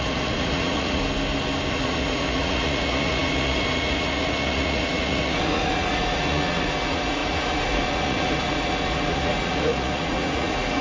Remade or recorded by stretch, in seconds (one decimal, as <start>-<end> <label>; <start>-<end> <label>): 0.0-1.0 remade; 1.0-1.7 recorded; 1.7-10.8 remade